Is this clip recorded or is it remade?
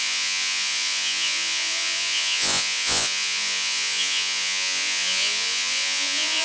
remade